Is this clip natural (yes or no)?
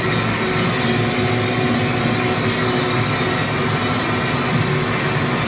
yes